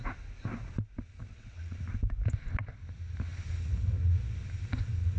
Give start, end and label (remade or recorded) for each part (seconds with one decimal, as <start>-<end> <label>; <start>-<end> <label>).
0.0-1.3 recorded; 1.3-1.8 remade; 1.8-5.2 recorded